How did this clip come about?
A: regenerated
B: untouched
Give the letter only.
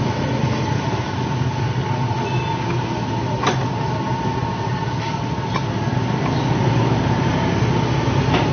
B